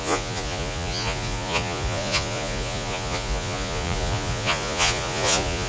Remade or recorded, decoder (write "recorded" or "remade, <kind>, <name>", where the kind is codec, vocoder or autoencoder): remade, vocoder, Vocos